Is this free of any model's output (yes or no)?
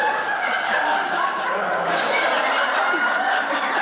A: yes